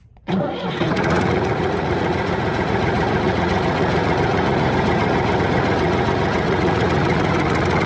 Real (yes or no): no